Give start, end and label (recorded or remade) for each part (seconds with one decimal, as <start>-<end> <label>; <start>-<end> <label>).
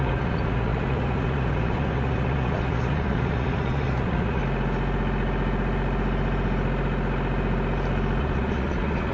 0.0-4.4 remade; 4.4-8.2 recorded; 8.2-9.1 remade